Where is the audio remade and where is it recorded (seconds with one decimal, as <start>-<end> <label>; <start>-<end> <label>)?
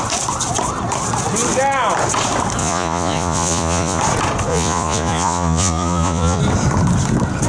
0.0-2.6 recorded; 2.6-4.0 remade; 4.0-4.5 recorded; 4.5-6.4 remade; 6.4-7.5 recorded